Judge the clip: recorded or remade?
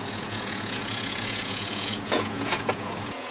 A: remade